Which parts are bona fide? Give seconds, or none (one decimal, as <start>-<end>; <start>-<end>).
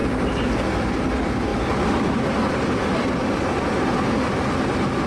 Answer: 0.0-5.1